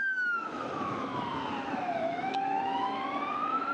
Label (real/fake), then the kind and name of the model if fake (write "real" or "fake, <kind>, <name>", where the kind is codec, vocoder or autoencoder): fake, autoencoder, DAC-VAE